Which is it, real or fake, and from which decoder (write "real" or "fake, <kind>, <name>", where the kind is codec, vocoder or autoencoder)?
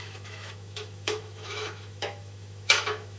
fake, autoencoder, DAC-VAE